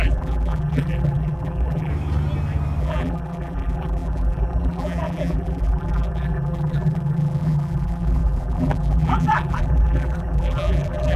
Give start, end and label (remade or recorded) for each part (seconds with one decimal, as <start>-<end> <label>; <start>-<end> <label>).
0.0-1.9 remade; 1.9-2.8 recorded; 2.8-11.2 remade